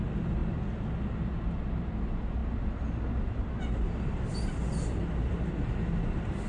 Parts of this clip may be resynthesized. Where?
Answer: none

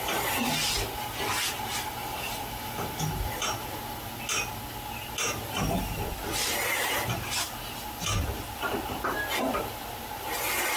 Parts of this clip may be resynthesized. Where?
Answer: none

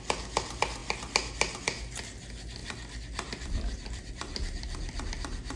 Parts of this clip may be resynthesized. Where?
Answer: 2.6-4.1 (vocoder, BigVGAN v2)

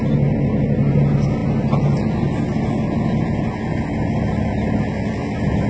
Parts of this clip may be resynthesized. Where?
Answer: none

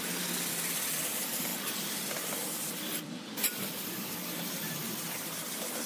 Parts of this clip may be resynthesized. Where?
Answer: 2.9-4.5 (vocoder, BigVGAN v2)